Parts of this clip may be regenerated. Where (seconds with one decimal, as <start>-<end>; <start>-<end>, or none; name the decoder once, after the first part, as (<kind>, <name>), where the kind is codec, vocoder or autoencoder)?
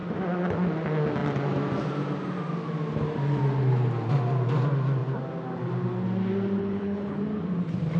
6.6-7.2 (codec, HILCodec)